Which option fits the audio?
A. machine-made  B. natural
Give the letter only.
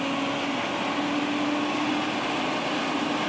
B